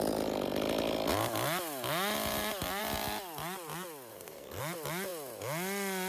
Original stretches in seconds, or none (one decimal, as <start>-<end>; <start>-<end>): 0.0-4.1; 4.6-6.1